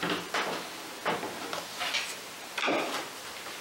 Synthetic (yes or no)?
no